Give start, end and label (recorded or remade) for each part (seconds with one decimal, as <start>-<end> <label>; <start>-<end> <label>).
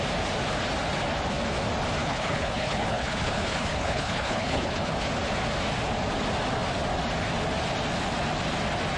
0.0-2.0 recorded; 2.0-4.9 remade; 4.9-9.0 recorded